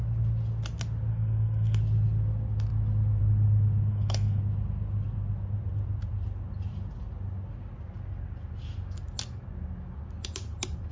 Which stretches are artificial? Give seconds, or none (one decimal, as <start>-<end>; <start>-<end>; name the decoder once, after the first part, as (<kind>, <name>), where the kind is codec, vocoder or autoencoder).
1.1-1.8 (codec, SNAC); 3.9-4.4

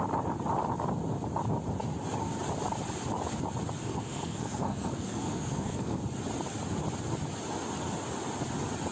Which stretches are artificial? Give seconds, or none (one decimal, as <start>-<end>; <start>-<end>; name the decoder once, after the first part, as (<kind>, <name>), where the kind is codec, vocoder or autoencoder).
3.8-6.0 (codec, SNAC)

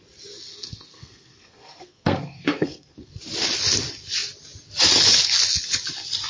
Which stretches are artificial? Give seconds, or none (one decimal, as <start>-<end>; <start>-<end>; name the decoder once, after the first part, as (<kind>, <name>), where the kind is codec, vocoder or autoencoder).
0.5-3.1 (codec, SNAC)

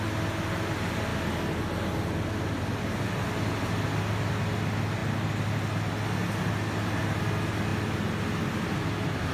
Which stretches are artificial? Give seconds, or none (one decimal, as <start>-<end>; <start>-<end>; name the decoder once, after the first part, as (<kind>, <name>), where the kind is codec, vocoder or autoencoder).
none

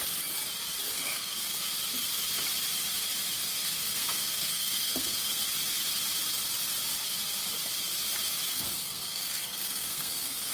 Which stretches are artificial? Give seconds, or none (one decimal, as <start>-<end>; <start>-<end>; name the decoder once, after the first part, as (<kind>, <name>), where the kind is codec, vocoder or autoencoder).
0.9-1.6 (codec, SNAC); 3.6-5.4; 8.5-10.5

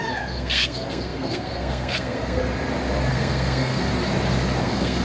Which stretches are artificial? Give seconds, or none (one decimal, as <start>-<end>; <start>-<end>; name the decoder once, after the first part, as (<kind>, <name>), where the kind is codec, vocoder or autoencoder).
0.0-2.4 (codec, SNAC); 3.1-3.9; 4.6-5.0

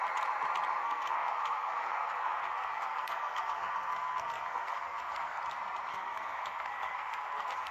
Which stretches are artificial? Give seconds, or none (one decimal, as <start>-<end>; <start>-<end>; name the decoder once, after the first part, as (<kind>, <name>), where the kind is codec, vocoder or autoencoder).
0.8-5.4 (codec, SNAC); 5.9-7.7

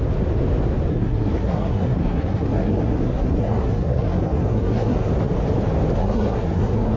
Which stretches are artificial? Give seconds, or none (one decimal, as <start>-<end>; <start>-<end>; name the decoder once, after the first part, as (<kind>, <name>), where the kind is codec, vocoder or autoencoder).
0.9-5.1 (codec, SNAC); 6.0-7.0